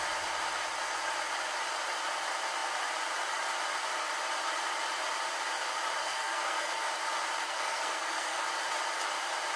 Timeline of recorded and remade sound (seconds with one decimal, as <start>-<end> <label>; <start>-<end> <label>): 0.0-6.0 recorded; 6.0-6.9 remade; 6.9-7.4 recorded; 7.4-8.4 remade; 8.4-9.6 recorded